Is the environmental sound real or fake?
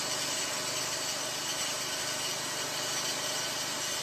real